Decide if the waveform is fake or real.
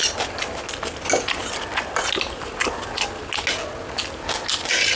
real